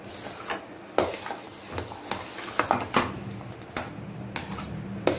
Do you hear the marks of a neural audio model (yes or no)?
no